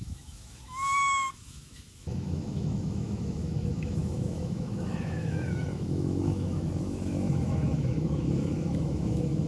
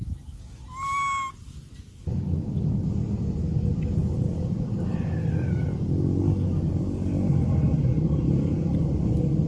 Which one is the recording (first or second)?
second